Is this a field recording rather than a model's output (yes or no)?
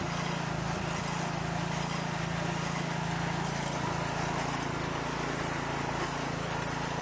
yes